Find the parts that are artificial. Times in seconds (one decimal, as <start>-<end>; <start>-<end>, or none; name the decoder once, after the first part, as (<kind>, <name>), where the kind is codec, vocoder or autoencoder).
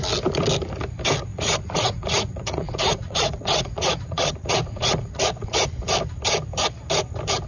1.3-5.7 (vocoder, Vocos)